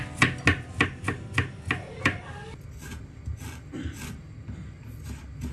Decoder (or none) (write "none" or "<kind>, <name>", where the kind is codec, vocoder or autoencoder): none